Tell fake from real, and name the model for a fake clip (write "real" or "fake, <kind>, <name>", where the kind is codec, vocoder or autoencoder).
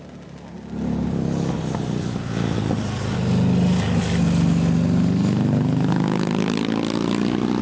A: real